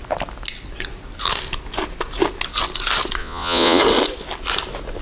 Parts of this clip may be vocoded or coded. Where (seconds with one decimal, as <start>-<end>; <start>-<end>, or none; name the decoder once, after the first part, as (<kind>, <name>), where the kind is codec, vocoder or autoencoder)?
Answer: 3.2-3.8 (vocoder, Vocos)